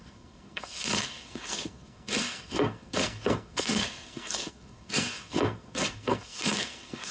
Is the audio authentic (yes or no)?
no